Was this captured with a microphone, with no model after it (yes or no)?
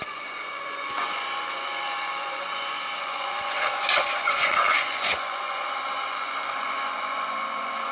no